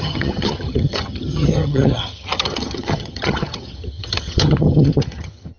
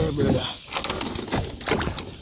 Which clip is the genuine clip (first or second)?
second